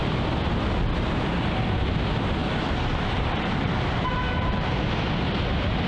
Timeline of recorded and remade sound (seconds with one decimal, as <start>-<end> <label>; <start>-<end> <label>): 0.0-2.4 recorded; 2.4-4.9 remade; 4.9-5.9 recorded